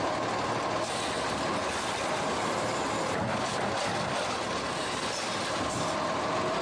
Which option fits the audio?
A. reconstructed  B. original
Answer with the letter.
B